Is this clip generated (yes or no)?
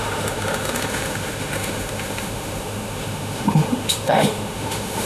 yes